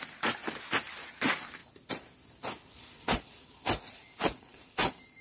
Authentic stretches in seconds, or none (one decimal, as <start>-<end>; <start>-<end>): 0.4-1.1; 1.6-2.3